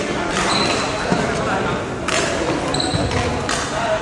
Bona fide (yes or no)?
yes